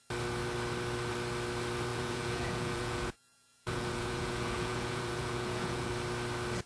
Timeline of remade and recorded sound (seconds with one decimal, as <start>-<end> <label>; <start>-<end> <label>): 0.0-1.9 recorded; 1.9-5.9 remade; 5.9-6.7 recorded